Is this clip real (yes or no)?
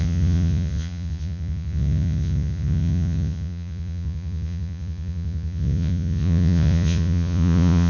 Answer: no